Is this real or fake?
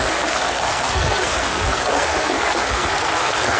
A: fake